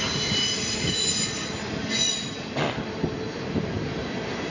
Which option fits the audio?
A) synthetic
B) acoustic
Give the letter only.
B